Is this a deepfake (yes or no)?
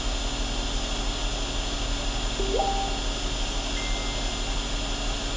no